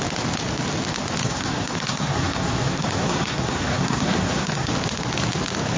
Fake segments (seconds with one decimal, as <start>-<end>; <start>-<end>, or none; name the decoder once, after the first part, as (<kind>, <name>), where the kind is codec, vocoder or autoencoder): 1.2-4.7 (codec, SNAC)